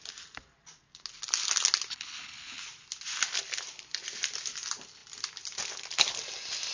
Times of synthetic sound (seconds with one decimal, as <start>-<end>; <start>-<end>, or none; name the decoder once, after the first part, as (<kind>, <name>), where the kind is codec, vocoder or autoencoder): 1.9-2.6 (codec, HILCodec)